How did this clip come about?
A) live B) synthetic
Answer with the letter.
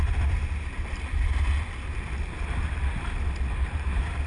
A